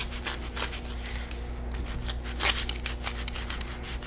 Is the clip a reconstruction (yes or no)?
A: no